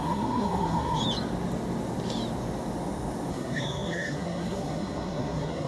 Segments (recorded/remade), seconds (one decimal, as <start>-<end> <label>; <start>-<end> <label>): 0.0-1.0 remade; 1.0-3.3 recorded; 3.3-5.7 remade